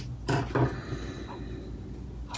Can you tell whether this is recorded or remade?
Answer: recorded